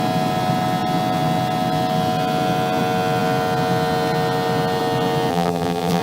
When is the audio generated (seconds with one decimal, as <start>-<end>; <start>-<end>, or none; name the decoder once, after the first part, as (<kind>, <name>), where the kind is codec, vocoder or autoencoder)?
5.3-6.0 (vocoder, BigVGAN v2)